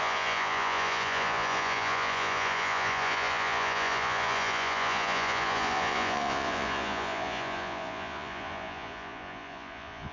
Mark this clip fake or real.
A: fake